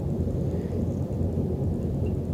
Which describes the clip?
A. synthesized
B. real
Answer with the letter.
B